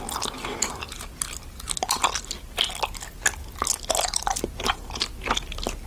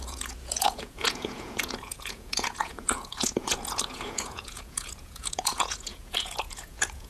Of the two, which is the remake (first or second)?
second